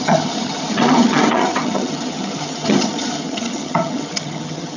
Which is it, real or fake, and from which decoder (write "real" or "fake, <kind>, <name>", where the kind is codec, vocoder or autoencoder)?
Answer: fake, vocoder, HiFi-GAN